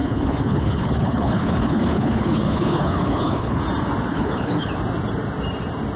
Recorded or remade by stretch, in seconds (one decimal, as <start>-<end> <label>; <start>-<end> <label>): 0.0-3.6 remade; 3.6-4.1 recorded; 4.1-4.7 remade; 4.7-6.0 recorded